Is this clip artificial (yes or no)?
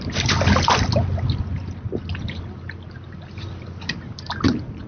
no